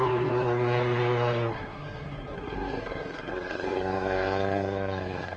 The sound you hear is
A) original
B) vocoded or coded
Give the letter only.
B